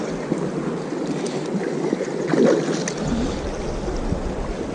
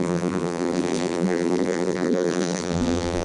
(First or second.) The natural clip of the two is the first